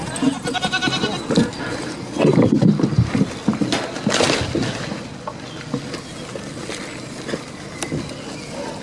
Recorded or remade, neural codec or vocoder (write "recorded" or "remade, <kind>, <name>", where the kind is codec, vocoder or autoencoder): recorded